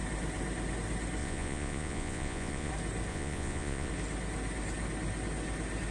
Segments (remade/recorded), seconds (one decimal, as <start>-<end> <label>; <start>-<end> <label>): 0.0-1.2 recorded; 1.2-2.7 remade; 2.7-3.1 recorded; 3.1-3.9 remade; 3.9-5.9 recorded